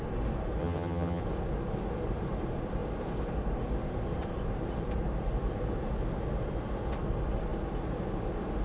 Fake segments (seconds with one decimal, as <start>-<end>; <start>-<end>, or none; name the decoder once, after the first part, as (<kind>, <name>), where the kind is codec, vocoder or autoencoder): 0.6-1.2 (vocoder, HiFi-GAN)